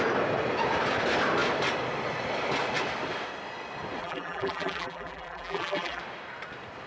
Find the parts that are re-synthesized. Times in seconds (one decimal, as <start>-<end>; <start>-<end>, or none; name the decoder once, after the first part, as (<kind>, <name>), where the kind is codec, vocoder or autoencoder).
4.0-6.0 (vocoder, BigVGAN v2)